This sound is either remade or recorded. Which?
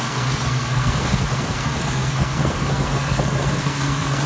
remade